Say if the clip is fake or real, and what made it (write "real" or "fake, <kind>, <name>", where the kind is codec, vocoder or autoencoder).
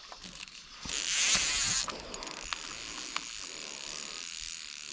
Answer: real